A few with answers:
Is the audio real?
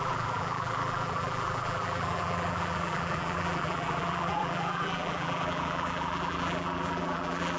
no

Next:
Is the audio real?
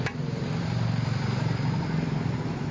no